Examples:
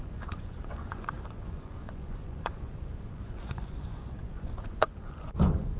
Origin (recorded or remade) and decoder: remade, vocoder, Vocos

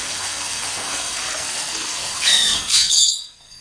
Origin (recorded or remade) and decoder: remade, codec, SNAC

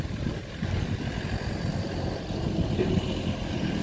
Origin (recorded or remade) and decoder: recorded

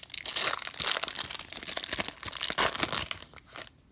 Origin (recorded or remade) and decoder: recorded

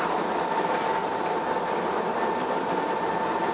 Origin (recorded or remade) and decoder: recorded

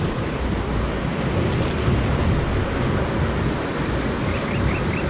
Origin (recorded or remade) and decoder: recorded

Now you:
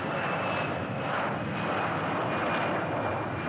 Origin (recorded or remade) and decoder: recorded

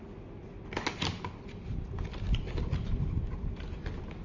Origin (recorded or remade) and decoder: recorded